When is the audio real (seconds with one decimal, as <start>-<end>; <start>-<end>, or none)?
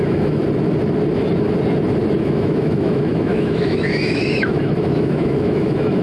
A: 0.4-2.2